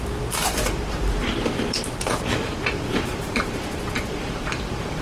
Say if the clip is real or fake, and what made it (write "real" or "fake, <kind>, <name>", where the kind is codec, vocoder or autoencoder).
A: fake, vocoder, BigVGAN v2